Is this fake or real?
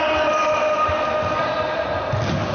real